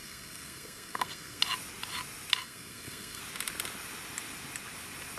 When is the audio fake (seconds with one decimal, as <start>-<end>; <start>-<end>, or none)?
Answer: 0.0-1.4; 2.4-3.2